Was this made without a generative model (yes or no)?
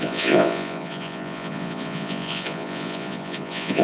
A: no